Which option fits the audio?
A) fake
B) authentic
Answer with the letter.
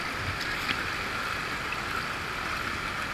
B